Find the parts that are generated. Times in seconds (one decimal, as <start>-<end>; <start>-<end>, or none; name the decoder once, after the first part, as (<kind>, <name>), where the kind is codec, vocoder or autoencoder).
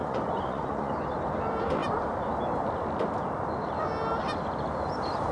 0.0-0.9 (vocoder, Vocos)